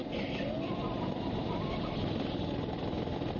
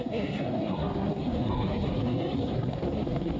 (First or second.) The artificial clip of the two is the second